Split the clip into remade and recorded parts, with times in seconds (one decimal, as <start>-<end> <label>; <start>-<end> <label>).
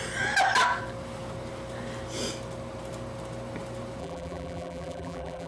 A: 0.0-4.0 recorded; 4.0-5.5 remade